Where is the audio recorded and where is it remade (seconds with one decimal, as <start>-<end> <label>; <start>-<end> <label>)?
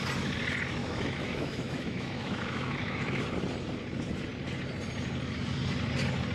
0.0-0.8 recorded; 0.8-3.2 remade; 3.2-6.3 recorded